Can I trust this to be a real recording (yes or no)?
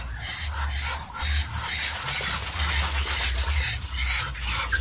yes